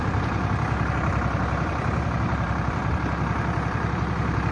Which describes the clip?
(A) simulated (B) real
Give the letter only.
A